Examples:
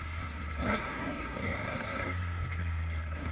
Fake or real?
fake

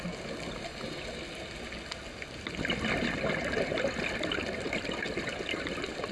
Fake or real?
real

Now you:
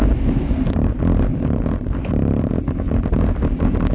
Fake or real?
real